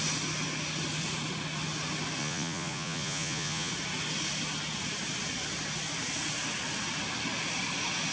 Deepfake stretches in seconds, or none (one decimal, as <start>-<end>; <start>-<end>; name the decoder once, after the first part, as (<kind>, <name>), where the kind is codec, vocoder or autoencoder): 2.2-3.7 (vocoder, Vocos)

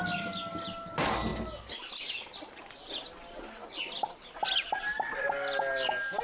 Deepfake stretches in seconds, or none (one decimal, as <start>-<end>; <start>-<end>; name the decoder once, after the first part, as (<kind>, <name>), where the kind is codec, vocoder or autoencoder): none

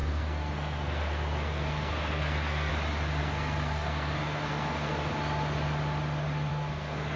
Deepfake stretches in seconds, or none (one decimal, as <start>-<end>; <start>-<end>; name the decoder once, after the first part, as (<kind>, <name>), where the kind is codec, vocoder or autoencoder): 0.0-2.7 (codec, SNAC); 3.2-5.1; 6.5-7.2

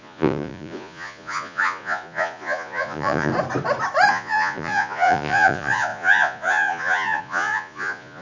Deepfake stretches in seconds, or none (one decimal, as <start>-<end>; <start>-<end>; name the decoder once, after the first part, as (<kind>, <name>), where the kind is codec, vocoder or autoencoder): 0.0-3.3 (vocoder, Vocos); 4.1-8.2

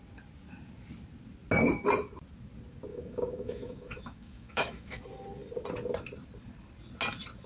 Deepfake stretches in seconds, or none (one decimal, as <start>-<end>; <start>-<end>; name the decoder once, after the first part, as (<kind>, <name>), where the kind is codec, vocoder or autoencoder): 2.9-5.0 (autoencoder, DAC-VAE)

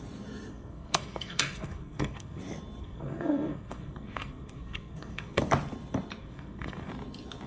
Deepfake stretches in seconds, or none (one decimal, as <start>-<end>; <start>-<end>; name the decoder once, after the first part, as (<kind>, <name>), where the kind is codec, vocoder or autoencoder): 0.5-2.4 (codec, SNAC); 2.8-5.4; 6.2-6.9